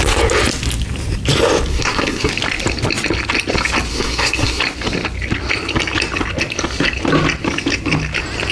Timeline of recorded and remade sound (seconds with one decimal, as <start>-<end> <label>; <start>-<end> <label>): 0.0-1.7 recorded; 1.7-2.3 remade; 2.3-3.9 recorded; 3.9-4.6 remade; 4.6-8.5 recorded

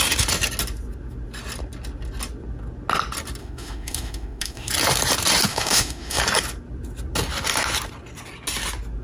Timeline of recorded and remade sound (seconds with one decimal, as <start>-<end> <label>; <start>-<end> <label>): 0.0-3.4 recorded; 3.4-4.7 remade; 4.7-5.5 recorded; 5.5-6.2 remade; 6.2-9.0 recorded

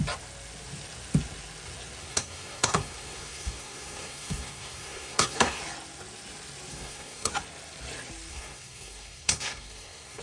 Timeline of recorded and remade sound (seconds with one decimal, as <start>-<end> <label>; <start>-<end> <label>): 0.0-2.0 recorded; 2.0-5.6 remade; 5.6-6.7 recorded; 6.7-7.3 remade; 7.3-8.3 recorded; 8.3-10.2 remade

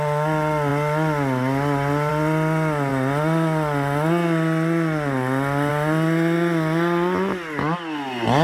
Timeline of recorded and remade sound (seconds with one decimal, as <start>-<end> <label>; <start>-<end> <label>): 0.0-8.4 recorded

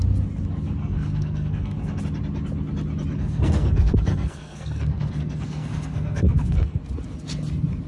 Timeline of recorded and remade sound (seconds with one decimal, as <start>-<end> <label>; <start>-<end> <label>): 0.0-0.8 recorded; 0.8-2.0 remade; 2.0-3.2 recorded; 3.2-6.8 remade; 6.8-7.9 recorded

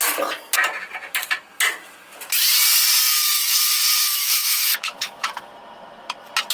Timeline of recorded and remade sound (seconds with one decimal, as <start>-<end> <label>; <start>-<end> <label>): 0.0-3.1 recorded; 3.1-5.5 remade; 5.5-6.5 recorded

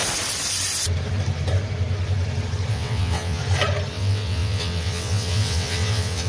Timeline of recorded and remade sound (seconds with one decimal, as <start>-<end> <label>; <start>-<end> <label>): 0.0-2.7 recorded; 2.7-3.4 remade; 3.4-3.9 recorded; 3.9-6.3 remade